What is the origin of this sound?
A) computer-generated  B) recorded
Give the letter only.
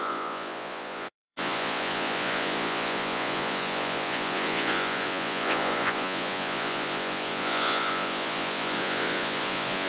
A